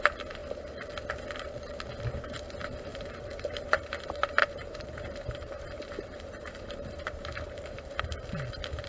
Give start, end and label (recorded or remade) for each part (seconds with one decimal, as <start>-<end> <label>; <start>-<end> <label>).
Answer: 0.0-2.9 recorded; 2.9-3.9 remade; 3.9-4.4 recorded; 4.4-8.0 remade; 8.0-8.9 recorded